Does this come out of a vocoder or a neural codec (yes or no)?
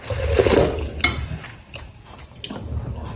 no